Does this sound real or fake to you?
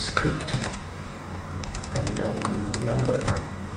fake